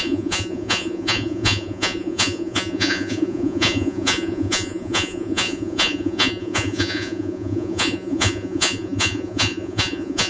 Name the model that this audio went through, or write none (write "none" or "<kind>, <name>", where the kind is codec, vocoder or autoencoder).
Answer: vocoder, Vocos